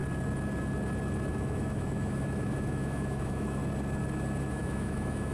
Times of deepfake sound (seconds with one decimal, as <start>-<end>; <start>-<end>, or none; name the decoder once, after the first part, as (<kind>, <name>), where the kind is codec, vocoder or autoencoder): 1.3-3.6 (autoencoder, DAC-VAE); 4.5-5.3